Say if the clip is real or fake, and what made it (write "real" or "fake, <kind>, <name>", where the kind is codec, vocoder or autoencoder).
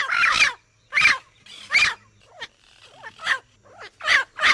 real